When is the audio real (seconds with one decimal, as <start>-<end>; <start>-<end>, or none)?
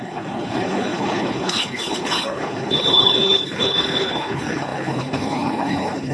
none